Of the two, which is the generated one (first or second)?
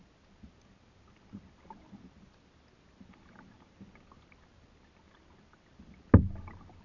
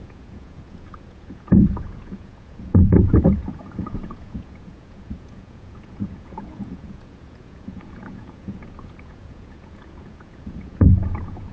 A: second